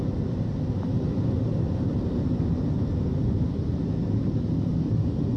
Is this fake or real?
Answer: real